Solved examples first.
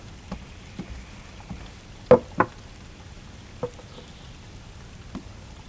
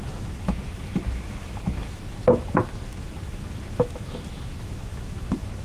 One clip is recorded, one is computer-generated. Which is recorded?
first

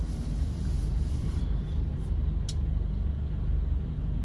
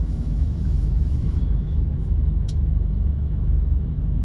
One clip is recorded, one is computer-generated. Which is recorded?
first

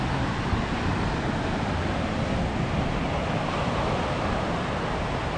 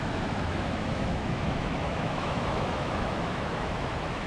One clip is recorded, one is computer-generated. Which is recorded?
first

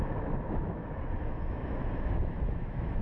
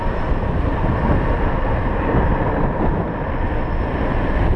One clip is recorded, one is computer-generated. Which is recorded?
second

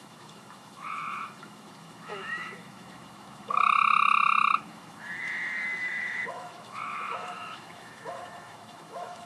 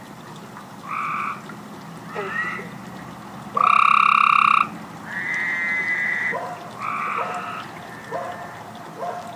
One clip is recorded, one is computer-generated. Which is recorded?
second